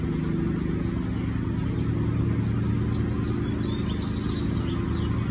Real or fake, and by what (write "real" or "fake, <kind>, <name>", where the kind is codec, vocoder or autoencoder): real